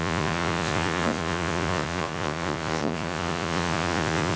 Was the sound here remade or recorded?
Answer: remade